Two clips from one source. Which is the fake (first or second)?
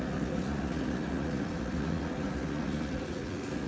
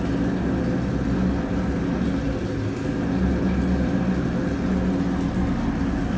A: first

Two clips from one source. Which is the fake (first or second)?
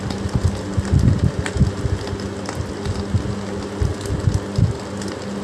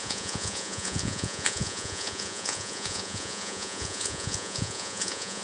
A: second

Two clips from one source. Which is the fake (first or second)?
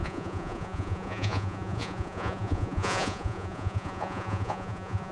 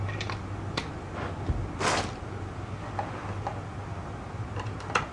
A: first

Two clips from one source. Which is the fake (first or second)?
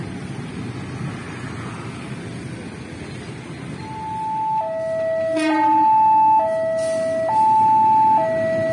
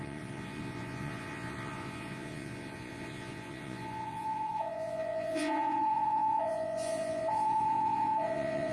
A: second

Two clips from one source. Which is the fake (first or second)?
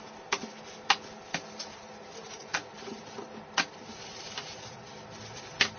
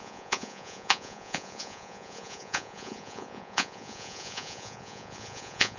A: second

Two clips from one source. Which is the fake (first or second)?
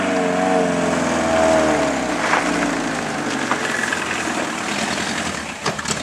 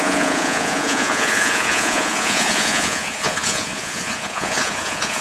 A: second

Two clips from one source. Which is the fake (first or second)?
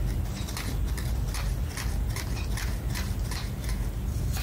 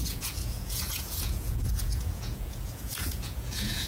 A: second